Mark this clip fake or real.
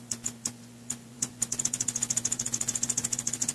fake